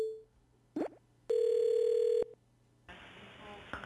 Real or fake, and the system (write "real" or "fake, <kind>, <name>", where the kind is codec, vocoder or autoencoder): real